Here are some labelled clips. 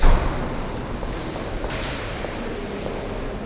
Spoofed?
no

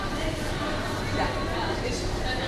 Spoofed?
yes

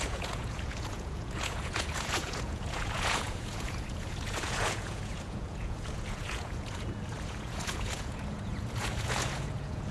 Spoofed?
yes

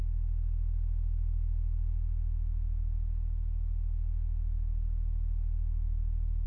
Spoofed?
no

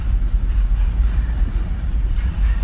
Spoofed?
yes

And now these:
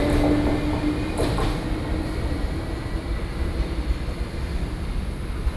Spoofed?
no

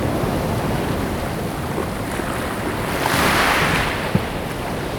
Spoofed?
no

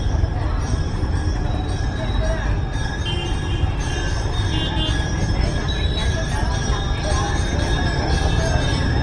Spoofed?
no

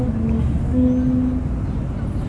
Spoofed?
no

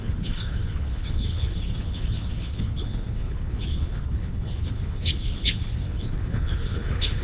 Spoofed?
yes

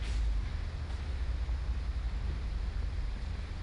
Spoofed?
no